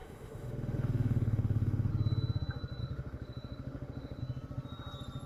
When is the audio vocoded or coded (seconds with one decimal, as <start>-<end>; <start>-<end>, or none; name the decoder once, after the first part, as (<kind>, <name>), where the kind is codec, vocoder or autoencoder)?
0.0-1.9 (autoencoder, DAC-VAE); 2.8-4.2